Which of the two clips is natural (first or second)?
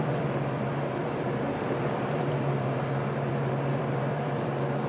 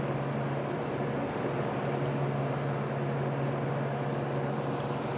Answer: second